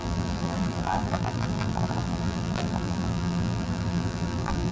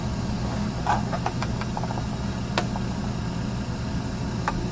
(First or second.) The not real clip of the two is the first